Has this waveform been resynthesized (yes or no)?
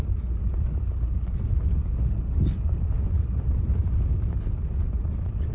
no